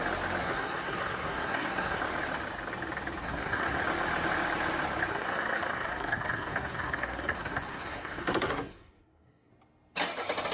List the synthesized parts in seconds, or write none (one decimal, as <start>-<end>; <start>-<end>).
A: 0.4-2.0; 3.2-3.8; 5.1-9.5